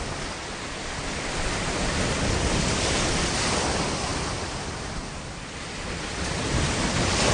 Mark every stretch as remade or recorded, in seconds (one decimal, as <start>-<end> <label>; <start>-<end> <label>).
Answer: 0.0-7.3 recorded